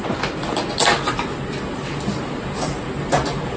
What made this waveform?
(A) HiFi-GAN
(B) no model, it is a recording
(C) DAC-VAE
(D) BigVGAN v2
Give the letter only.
B